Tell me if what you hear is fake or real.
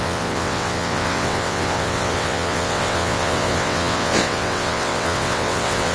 fake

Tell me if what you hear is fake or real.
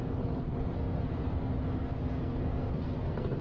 fake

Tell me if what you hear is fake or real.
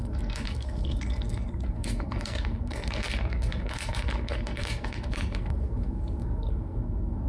fake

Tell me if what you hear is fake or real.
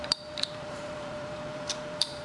fake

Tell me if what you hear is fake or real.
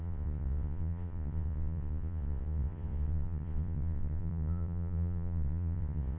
fake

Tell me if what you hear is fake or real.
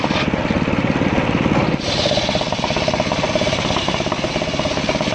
real